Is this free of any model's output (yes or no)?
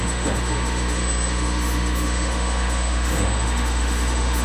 no